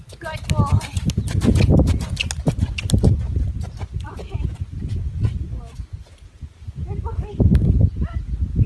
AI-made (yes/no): no